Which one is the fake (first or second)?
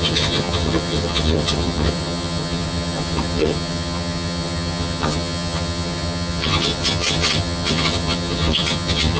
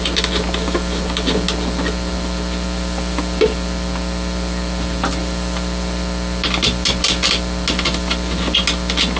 first